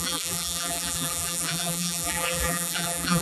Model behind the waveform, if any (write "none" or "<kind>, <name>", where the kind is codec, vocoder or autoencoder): vocoder, BigVGAN v2